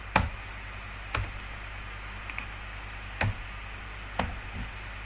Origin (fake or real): real